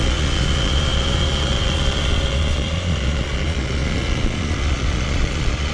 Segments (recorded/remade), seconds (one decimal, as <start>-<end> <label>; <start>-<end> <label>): 0.0-5.7 remade